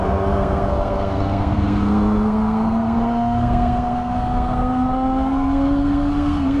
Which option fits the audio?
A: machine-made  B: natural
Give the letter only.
A